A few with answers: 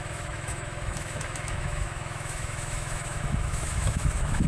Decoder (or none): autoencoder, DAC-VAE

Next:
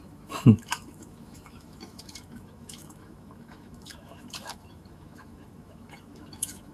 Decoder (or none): autoencoder, DAC-VAE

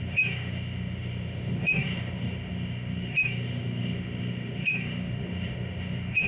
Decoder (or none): autoencoder, DAC-VAE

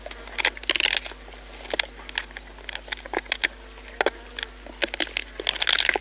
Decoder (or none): none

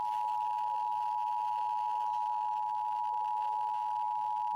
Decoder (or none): none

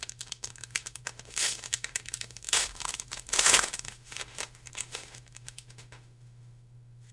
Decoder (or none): autoencoder, DAC-VAE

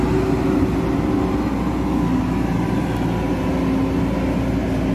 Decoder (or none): none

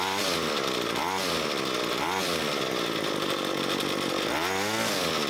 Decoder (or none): none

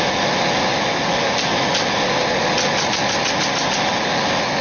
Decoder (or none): none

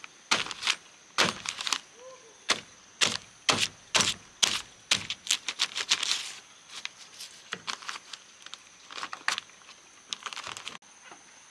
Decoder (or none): none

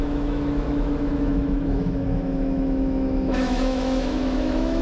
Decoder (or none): autoencoder, DAC-VAE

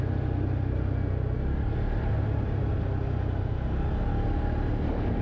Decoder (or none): none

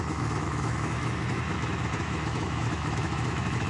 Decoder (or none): autoencoder, DAC-VAE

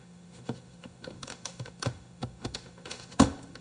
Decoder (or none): autoencoder, DAC-VAE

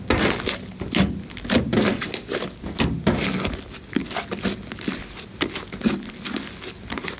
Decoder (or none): none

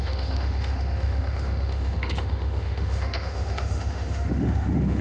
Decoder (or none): autoencoder, DAC-VAE